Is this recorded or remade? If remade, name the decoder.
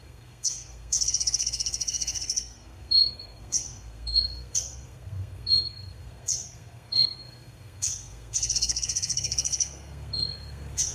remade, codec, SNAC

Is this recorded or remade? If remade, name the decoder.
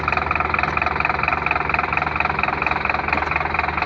recorded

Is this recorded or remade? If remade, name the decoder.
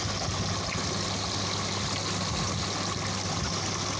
recorded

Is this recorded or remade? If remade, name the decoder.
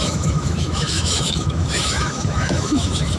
remade, autoencoder, DAC-VAE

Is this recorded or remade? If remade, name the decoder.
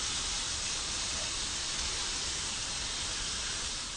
recorded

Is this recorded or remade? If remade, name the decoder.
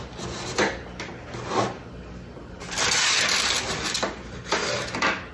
recorded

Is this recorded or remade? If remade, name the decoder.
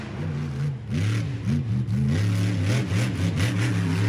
recorded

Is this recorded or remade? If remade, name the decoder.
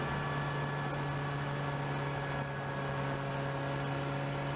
recorded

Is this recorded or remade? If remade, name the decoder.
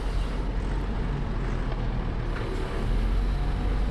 recorded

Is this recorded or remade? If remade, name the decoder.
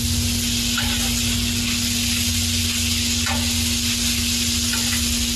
recorded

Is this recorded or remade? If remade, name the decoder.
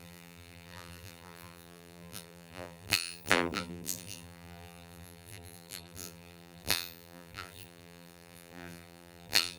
remade, vocoder, BigVGAN v2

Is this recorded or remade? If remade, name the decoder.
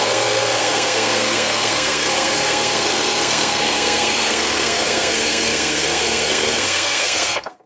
remade, codec, SNAC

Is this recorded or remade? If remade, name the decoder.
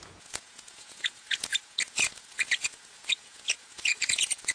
remade, vocoder, Vocos